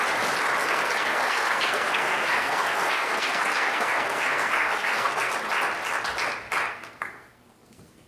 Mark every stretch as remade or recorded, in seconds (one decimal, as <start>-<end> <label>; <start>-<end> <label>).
0.0-0.6 recorded; 0.6-5.3 remade; 5.3-6.7 recorded; 6.7-8.1 remade